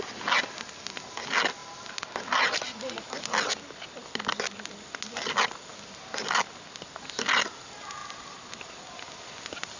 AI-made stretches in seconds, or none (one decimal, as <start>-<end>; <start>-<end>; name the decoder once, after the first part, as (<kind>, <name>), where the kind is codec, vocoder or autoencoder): none

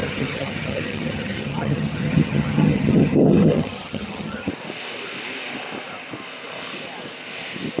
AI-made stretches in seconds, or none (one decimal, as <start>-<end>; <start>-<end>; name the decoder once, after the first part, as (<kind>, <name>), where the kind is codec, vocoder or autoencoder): 0.0-4.5 (vocoder, HiFi-GAN)

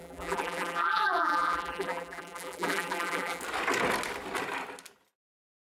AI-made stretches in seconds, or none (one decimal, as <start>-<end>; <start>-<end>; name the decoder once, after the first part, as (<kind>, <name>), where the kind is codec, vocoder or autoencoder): 0.0-3.4 (vocoder, BigVGAN v2)